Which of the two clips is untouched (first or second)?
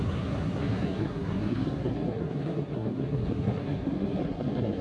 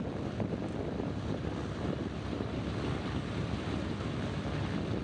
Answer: second